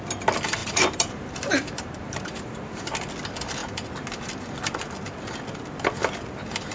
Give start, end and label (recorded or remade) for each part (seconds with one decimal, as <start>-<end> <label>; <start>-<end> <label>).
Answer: 0.0-0.6 recorded; 0.6-3.1 remade; 3.1-6.7 recorded